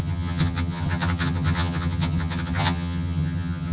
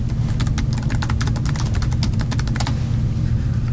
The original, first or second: second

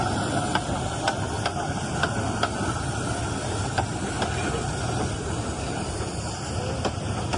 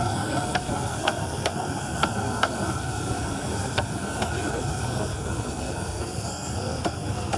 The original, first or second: first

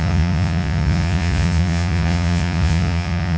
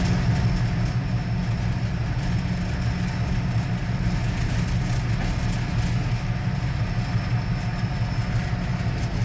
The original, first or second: second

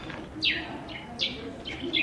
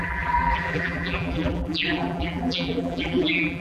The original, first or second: first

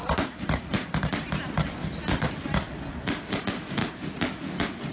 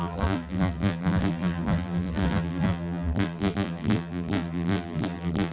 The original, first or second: first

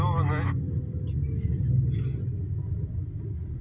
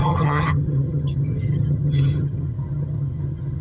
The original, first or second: first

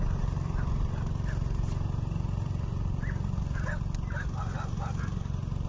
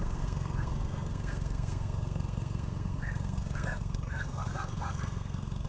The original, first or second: first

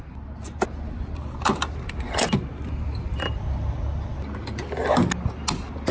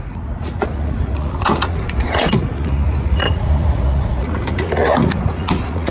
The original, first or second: first